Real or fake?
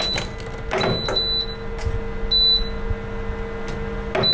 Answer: real